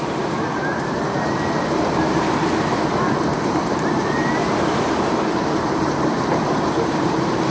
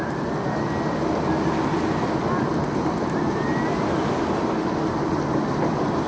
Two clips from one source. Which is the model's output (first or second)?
first